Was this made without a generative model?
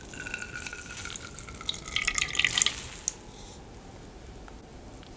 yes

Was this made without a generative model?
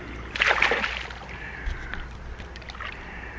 yes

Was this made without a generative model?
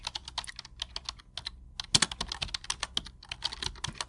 yes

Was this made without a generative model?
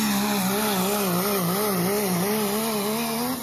yes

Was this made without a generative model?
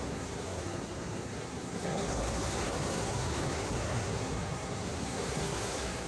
no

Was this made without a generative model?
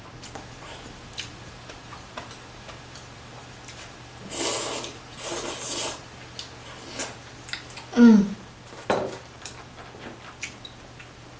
yes